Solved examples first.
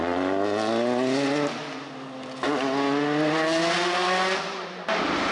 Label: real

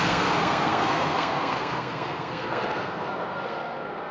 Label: fake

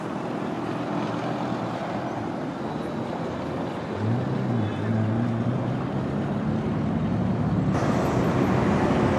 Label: real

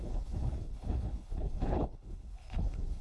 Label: fake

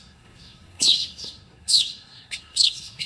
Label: fake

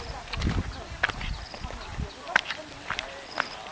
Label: real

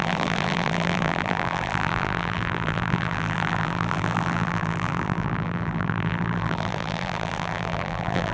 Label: fake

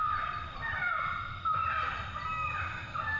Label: real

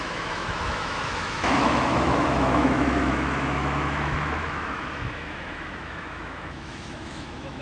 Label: fake